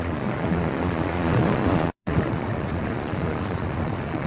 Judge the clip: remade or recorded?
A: remade